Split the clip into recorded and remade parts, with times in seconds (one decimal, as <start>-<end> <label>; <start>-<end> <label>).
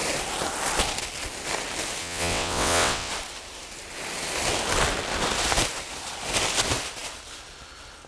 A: 0.0-2.0 recorded; 2.0-3.1 remade; 3.1-8.1 recorded